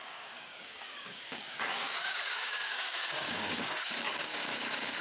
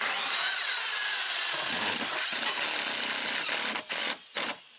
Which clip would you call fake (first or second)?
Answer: first